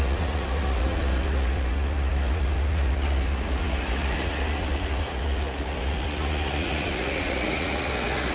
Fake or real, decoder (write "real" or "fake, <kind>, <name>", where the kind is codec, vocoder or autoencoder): fake, vocoder, Vocos